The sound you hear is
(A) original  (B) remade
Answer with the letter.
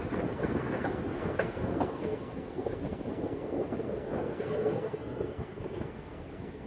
B